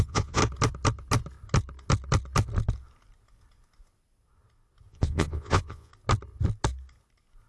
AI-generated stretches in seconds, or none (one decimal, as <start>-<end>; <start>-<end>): 0.0-0.4; 4.9-5.9